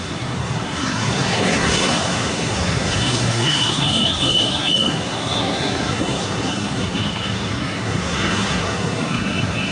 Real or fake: fake